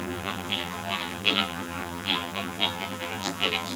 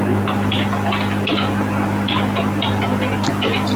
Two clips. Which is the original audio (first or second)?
second